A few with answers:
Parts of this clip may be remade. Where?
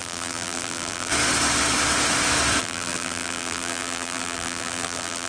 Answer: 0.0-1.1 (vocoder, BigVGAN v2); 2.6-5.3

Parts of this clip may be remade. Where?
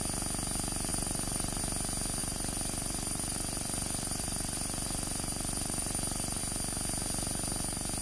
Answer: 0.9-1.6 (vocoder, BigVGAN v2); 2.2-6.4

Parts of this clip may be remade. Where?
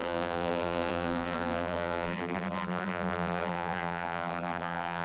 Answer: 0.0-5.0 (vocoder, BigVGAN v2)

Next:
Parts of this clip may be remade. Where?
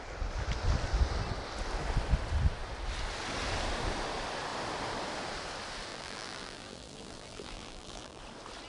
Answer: 5.9-8.2 (vocoder, BigVGAN v2)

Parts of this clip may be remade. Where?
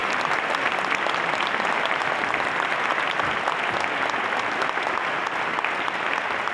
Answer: 1.2-2.9 (vocoder, BigVGAN v2); 4.8-5.5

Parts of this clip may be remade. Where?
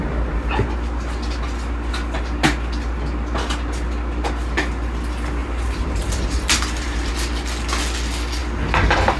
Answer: 5.4-7.1 (vocoder, BigVGAN v2)